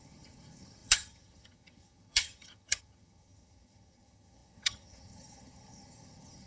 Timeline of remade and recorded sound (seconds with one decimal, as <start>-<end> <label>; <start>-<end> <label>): 0.0-6.5 remade